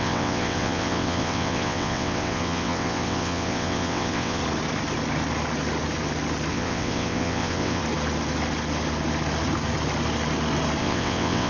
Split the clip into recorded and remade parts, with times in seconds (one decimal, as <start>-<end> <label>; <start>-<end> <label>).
0.0-4.4 remade; 4.4-6.5 recorded; 6.5-7.8 remade; 7.8-10.8 recorded; 10.8-11.5 remade